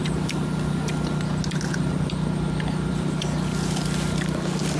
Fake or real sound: real